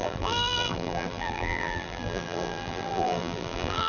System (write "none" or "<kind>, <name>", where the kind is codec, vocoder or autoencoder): vocoder, BigVGAN v2